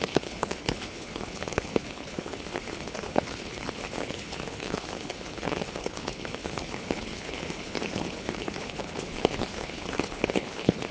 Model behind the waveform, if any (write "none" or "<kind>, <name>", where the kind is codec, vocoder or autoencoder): codec, HILCodec